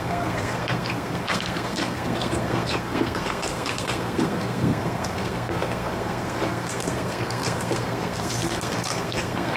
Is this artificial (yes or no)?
yes